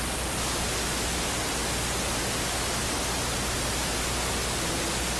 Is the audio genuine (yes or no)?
yes